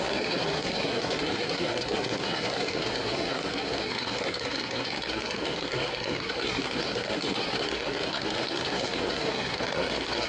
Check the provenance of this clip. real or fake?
fake